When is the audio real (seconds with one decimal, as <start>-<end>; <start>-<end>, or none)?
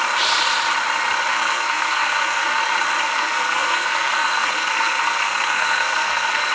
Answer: 0.0-1.3; 2.6-3.0